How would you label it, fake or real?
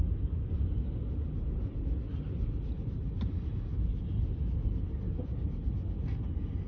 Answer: real